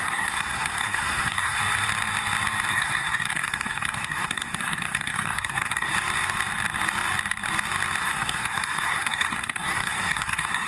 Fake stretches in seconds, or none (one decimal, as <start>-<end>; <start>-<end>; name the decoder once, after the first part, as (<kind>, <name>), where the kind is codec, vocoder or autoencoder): 0.0-1.6 (codec, SNAC); 2.7-5.9; 8.0-10.7